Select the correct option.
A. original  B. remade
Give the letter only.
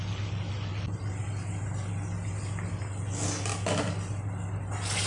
A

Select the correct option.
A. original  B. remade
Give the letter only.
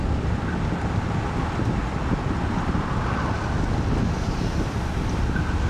A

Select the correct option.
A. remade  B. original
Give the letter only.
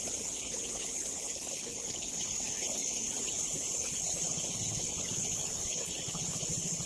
A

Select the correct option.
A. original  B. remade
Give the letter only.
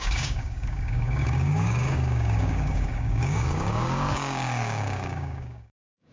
B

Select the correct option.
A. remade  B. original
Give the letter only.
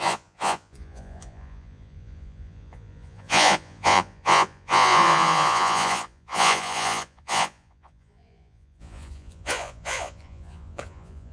A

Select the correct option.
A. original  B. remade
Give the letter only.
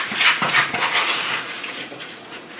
B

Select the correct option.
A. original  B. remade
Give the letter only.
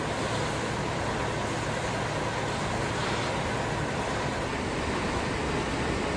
A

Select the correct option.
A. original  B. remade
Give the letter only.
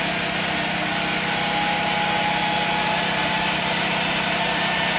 A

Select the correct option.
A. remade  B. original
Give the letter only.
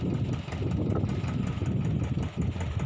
B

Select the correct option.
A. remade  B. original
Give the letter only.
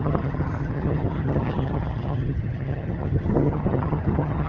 A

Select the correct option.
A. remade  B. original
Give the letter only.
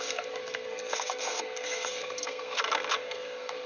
A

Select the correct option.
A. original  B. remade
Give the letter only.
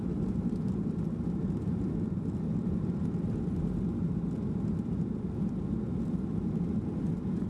B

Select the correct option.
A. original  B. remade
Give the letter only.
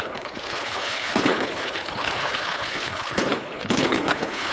B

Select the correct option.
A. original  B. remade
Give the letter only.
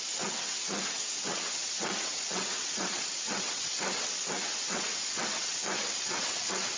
B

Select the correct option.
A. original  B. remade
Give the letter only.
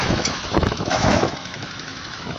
B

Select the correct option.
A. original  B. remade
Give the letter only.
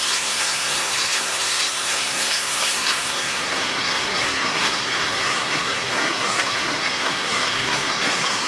B